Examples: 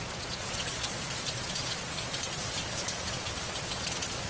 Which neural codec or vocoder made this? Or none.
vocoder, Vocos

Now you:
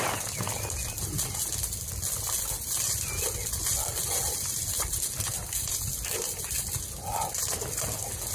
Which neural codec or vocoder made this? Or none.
none